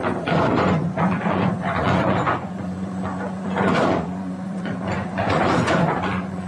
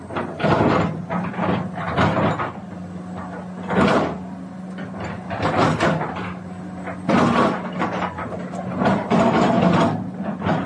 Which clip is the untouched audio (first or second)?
second